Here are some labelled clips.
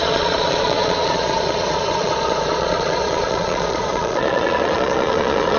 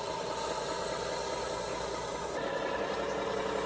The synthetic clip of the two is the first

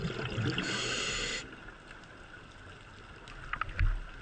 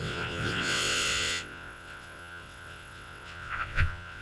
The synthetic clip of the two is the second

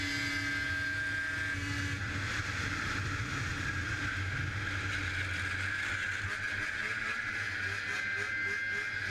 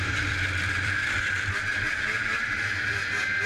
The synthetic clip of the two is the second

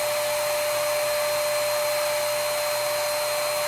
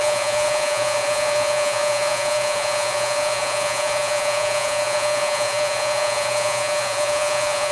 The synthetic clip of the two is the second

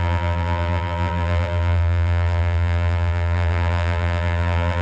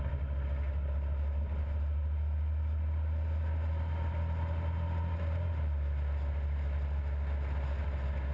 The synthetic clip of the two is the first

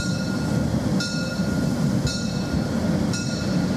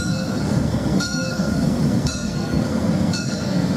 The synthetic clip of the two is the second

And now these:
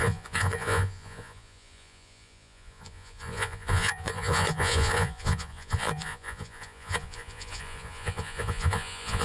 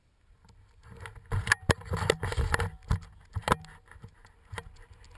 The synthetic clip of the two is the first